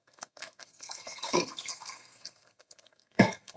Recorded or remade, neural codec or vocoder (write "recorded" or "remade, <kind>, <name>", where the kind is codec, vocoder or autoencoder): remade, codec, SNAC